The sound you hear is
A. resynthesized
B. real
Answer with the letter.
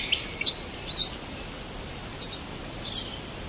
B